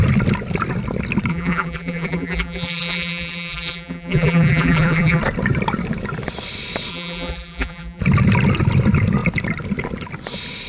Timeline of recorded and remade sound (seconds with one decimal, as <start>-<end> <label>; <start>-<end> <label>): 0.0-1.3 recorded; 1.3-5.2 remade; 5.2-6.9 recorded; 6.9-8.0 remade; 8.0-10.7 recorded